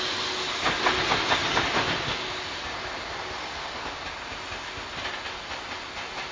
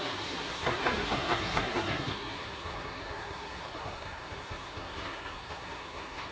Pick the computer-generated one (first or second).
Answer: second